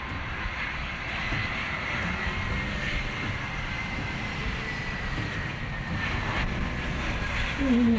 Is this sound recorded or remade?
recorded